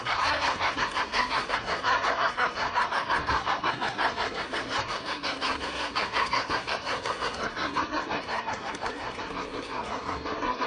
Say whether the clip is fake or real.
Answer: fake